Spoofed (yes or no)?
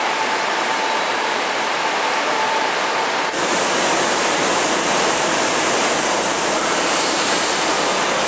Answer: yes